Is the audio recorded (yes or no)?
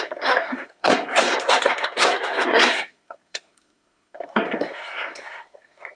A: no